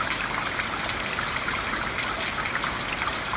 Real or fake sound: real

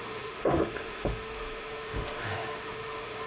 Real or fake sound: fake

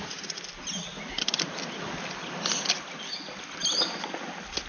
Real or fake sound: real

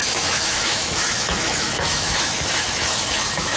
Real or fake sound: fake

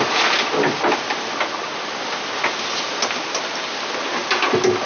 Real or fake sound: real